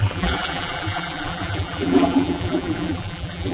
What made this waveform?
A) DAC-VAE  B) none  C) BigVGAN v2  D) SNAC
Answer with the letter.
C